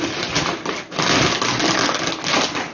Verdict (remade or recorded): recorded